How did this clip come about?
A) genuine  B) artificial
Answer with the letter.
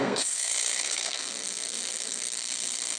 B